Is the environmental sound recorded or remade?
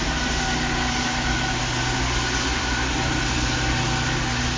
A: recorded